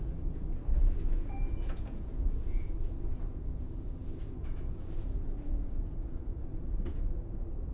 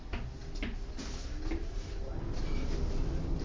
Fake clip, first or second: first